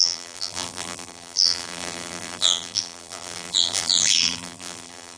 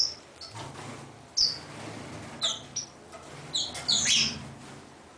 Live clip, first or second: second